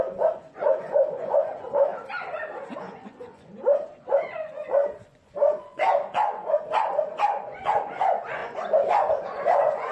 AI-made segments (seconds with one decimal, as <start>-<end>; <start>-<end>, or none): 0.0-1.9; 2.7-9.9